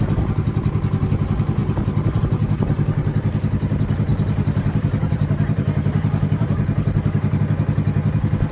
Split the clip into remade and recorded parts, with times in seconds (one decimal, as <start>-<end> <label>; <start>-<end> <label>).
0.0-1.6 recorded; 1.6-2.2 remade; 2.2-4.1 recorded; 4.1-7.4 remade; 7.4-8.5 recorded